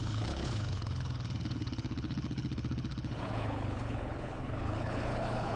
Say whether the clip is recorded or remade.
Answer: remade